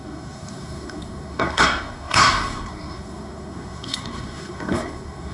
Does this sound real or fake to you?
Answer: fake